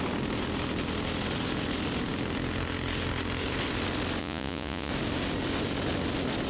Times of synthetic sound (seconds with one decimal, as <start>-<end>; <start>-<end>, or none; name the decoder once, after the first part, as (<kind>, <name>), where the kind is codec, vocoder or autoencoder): 4.2-4.9 (vocoder, Vocos)